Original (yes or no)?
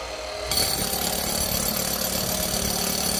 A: yes